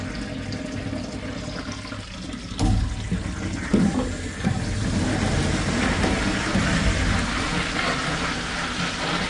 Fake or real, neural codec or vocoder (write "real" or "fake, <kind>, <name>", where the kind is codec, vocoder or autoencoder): real